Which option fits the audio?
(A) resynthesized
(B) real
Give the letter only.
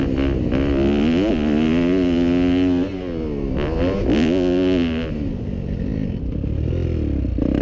B